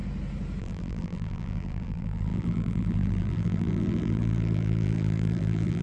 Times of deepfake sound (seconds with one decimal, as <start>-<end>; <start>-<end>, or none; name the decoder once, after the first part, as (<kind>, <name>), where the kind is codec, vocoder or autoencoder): 0.6-5.8 (vocoder, BigVGAN v2)